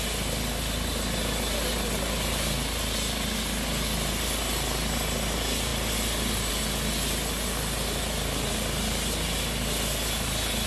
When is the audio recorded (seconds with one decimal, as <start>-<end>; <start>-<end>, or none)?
0.0-10.7